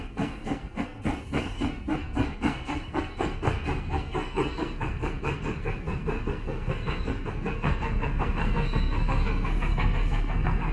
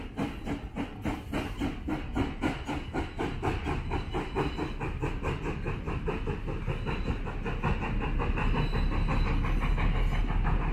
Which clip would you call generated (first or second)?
first